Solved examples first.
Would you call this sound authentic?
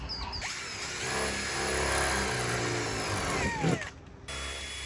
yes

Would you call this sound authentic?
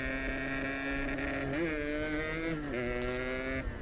yes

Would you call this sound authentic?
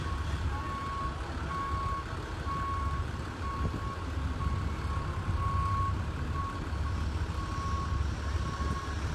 yes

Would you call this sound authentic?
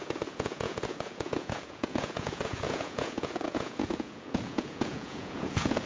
no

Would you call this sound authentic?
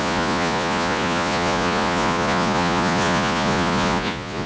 no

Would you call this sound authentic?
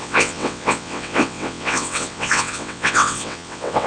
no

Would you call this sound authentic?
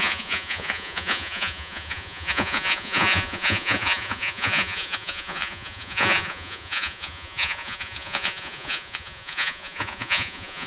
no